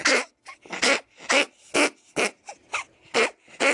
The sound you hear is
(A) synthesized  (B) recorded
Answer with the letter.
B